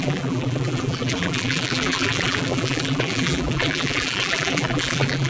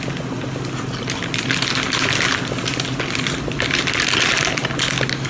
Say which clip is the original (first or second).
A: second